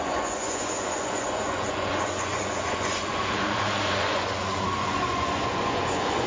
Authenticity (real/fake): fake